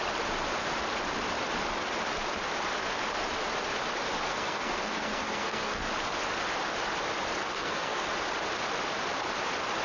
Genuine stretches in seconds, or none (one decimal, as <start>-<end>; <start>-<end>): 0.0-4.3; 5.9-7.4; 8.1-9.8